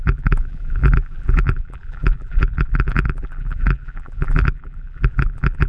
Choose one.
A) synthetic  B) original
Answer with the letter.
A